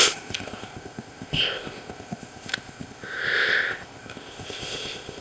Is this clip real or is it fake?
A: fake